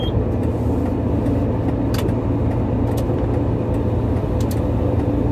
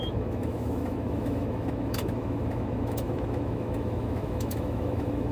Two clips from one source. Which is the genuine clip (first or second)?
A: first